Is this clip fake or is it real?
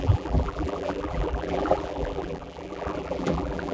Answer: fake